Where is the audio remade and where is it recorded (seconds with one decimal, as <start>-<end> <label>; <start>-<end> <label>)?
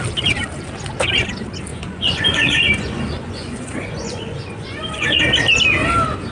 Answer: 0.0-1.7 recorded; 1.7-5.2 remade; 5.2-6.3 recorded